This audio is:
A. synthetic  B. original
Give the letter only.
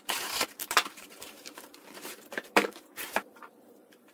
A